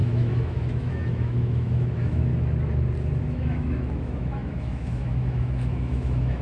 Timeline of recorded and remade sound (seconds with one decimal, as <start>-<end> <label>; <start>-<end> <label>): 0.0-2.3 remade; 2.3-3.2 recorded; 3.2-6.4 remade

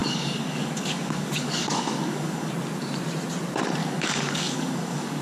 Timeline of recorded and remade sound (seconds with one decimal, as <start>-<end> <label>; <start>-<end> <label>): 0.0-2.5 remade; 2.5-3.8 recorded; 3.8-5.2 remade

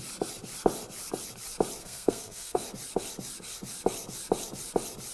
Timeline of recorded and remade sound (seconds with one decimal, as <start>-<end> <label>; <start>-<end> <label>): 0.0-1.8 recorded; 1.8-2.6 remade; 2.6-5.1 recorded

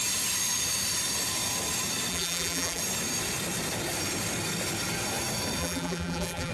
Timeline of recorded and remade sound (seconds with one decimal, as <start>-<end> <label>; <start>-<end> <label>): 0.0-2.1 recorded; 2.1-2.8 remade; 2.8-5.6 recorded; 5.6-6.5 remade

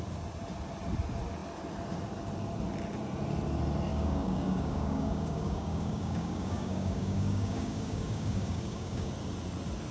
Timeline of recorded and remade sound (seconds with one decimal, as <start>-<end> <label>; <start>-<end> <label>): 0.0-3.9 recorded; 3.9-9.1 remade; 9.1-9.9 recorded

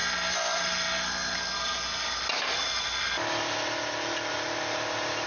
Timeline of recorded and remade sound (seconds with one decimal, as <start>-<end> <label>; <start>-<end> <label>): 0.0-5.3 recorded

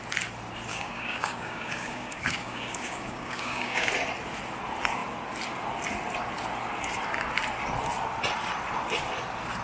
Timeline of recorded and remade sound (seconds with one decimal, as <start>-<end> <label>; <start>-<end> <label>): 0.0-0.7 recorded; 0.7-3.9 remade; 3.9-9.6 recorded

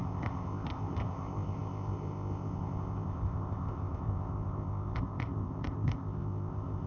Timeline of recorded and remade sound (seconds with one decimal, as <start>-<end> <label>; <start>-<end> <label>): 0.0-6.9 remade